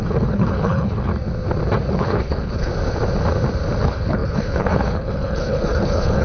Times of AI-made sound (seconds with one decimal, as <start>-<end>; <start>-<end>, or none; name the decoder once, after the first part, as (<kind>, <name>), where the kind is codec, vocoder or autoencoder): 0.0-1.1 (codec, HILCodec); 1.9-2.7; 3.8-6.2